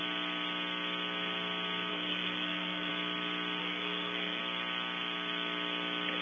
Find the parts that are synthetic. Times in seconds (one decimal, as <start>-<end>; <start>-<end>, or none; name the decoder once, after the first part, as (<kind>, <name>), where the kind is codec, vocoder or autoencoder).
1.9-2.9 (codec, SNAC); 3.6-4.4